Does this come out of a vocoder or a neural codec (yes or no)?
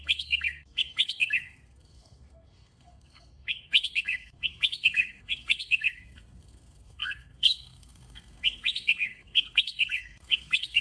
yes